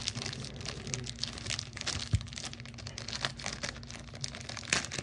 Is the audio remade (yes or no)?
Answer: no